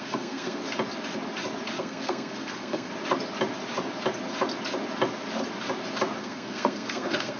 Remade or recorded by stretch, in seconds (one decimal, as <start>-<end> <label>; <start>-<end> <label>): 0.0-0.6 remade; 0.6-1.8 recorded; 1.8-2.9 remade; 2.9-6.2 recorded; 6.2-7.4 remade